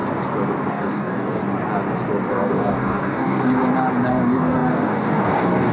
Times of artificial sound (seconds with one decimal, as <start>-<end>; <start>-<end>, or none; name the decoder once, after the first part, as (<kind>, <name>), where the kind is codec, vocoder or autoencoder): 0.7-1.4 (codec, DAC); 2.3-3.5; 4.1-5.7